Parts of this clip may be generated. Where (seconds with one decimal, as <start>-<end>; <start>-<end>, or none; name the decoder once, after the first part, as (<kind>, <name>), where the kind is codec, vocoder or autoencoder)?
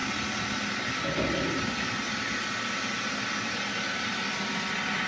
none